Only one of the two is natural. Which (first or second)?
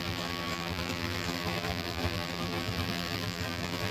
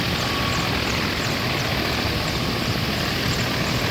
second